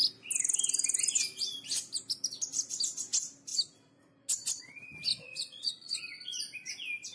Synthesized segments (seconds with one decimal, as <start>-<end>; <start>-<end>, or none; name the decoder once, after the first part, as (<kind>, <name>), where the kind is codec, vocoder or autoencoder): 5.1-6.0 (vocoder, Vocos)